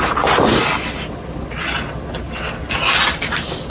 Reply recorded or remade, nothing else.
recorded